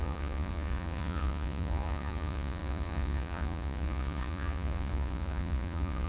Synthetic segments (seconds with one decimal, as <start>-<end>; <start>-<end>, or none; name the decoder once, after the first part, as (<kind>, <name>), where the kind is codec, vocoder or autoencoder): 0.0-6.1 (vocoder, Vocos)